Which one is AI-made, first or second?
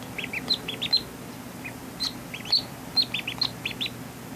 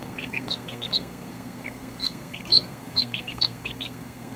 second